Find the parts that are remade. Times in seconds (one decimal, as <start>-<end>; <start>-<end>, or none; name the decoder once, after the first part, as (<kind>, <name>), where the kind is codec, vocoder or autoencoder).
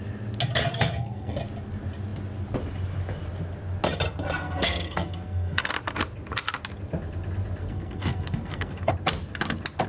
0.7-1.4 (codec, SNAC); 4.4-5.7; 7.6-8.9